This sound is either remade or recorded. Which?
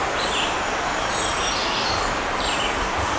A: remade